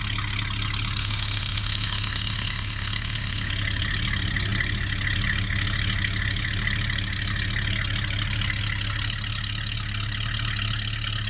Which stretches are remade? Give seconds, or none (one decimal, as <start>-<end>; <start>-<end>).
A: 1.0-3.5